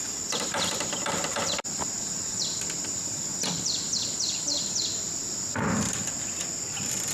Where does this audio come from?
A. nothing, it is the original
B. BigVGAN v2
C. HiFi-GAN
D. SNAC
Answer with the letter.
B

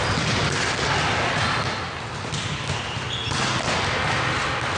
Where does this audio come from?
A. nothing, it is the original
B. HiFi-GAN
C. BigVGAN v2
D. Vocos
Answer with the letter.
A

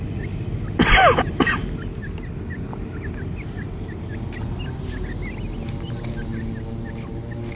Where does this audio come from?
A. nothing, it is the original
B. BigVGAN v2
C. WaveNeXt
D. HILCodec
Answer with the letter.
A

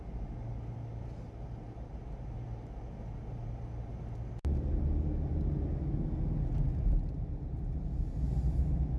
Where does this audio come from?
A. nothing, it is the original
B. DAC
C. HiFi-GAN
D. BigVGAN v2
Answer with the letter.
A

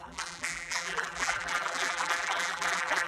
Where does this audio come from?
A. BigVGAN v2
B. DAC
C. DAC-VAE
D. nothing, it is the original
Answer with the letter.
A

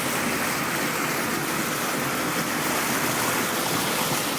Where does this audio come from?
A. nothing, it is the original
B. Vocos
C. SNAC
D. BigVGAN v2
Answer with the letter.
A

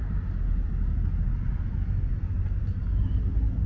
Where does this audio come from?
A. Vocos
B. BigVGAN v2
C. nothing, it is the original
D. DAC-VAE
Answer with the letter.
C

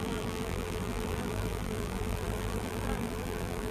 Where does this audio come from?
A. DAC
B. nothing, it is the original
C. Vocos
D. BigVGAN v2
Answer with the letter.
D